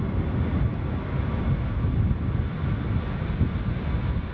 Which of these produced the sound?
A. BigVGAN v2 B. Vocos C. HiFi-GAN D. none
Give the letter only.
D